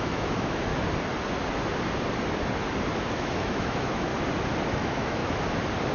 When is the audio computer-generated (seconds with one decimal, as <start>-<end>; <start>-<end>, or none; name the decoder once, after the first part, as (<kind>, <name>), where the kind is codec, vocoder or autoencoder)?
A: 0.0-0.7 (autoencoder, DAC-VAE); 3.1-4.1; 4.7-5.2